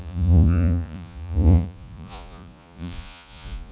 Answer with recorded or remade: remade